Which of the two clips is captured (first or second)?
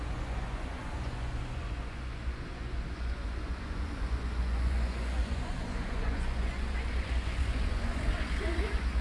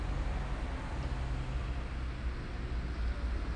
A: second